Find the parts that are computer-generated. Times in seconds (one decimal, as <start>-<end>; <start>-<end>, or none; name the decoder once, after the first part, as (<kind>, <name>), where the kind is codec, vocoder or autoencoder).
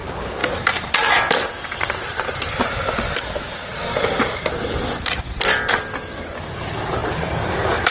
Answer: none